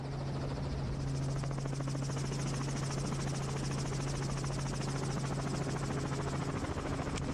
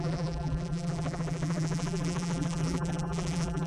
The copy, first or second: second